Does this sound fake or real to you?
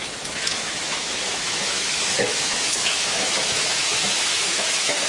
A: fake